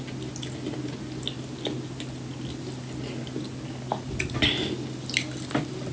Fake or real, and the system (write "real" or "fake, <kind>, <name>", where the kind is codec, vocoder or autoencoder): real